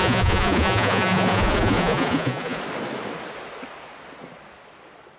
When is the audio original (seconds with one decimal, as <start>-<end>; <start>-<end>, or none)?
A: 2.6-5.2